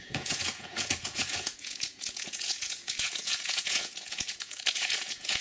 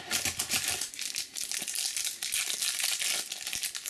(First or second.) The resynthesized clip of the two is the first